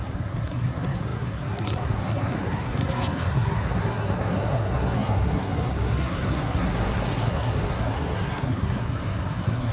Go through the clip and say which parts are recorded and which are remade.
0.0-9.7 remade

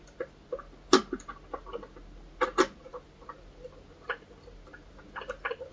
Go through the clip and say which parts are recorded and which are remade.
0.0-5.7 recorded